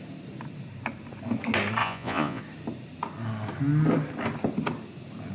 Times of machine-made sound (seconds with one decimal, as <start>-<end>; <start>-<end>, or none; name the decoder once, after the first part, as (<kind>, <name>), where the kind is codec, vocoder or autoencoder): 1.8-2.4 (vocoder, Vocos)